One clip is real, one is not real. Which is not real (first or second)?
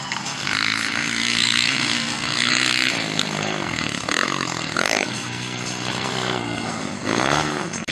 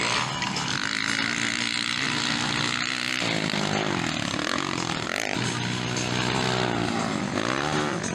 first